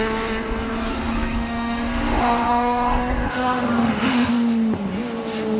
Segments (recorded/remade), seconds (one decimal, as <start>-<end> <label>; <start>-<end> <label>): 0.0-0.9 recorded; 0.9-4.3 remade; 4.3-5.6 recorded